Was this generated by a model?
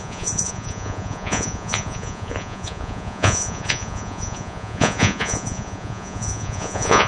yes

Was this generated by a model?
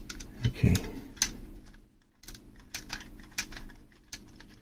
no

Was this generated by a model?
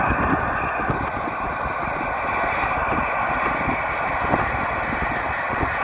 no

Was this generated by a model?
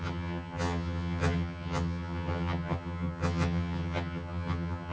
yes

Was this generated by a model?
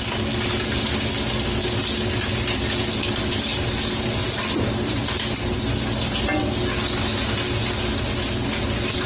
no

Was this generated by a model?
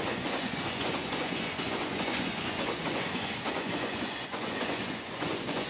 yes